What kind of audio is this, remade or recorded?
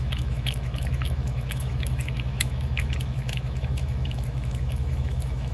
remade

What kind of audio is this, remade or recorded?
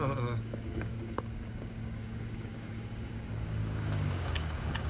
remade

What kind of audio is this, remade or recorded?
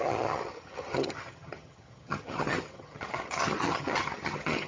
remade